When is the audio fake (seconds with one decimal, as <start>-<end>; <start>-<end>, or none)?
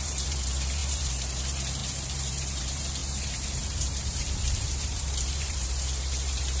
0.0-6.6